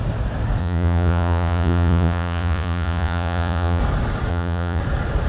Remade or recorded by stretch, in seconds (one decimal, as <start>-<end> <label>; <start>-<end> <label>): 0.0-0.6 recorded; 0.6-3.8 remade; 3.8-4.3 recorded; 4.3-4.8 remade; 4.8-5.3 recorded